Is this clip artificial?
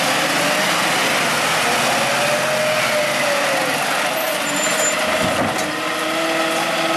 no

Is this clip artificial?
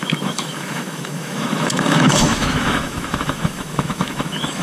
yes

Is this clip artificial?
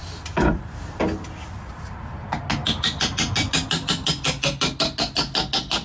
no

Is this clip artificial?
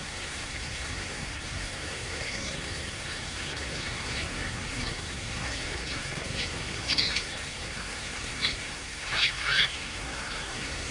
yes